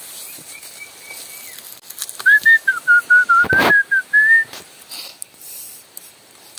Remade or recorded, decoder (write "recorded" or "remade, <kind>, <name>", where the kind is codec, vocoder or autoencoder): recorded